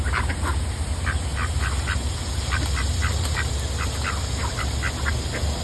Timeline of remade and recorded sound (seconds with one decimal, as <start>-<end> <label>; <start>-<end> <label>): 0.0-5.6 recorded